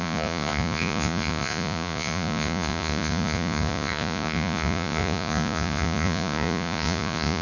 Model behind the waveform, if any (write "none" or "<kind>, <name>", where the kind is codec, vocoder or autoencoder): vocoder, Vocos